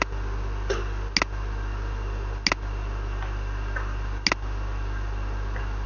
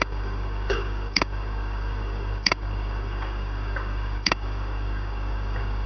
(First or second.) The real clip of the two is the first